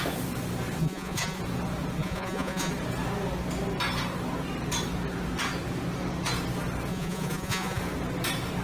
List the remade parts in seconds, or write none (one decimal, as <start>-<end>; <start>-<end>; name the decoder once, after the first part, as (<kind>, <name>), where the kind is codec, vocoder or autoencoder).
0.8-1.4 (vocoder, Vocos); 2.0-2.7; 6.9-7.8